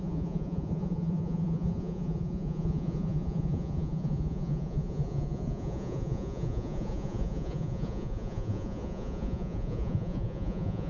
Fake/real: fake